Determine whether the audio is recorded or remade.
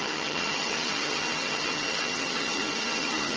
remade